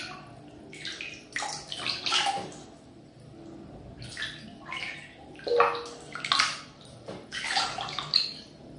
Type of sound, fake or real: real